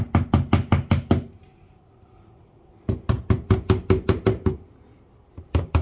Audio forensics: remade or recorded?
recorded